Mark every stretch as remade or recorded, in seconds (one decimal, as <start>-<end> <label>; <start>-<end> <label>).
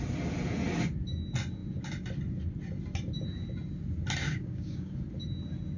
0.0-4.2 recorded; 4.2-4.9 remade; 4.9-5.8 recorded